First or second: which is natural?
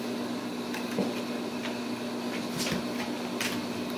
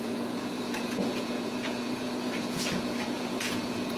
first